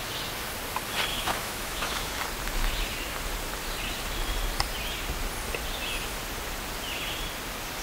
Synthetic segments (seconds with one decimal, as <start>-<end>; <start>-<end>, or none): 1.1-2.2